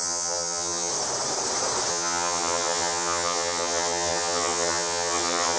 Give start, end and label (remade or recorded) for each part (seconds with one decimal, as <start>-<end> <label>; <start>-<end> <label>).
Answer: 0.0-0.9 remade; 0.9-1.9 recorded; 1.9-5.6 remade